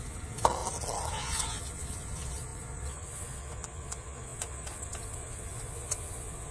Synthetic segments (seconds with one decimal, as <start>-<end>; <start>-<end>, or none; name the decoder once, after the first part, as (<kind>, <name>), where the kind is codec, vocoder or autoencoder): 0.0-0.6 (vocoder, Vocos); 1.1-6.5